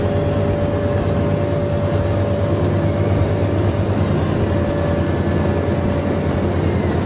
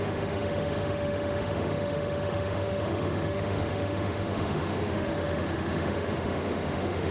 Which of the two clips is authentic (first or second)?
first